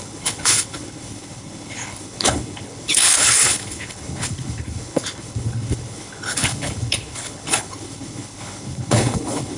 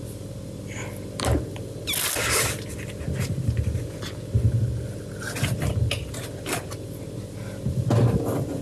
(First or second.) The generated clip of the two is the first